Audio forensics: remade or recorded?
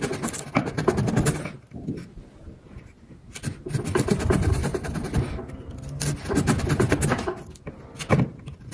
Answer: recorded